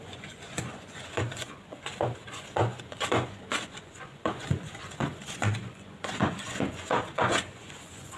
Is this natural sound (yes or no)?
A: no